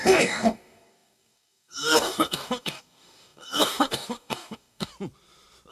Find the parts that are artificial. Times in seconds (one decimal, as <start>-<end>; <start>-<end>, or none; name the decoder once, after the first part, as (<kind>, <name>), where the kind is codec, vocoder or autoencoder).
0.0-4.9 (codec, DAC)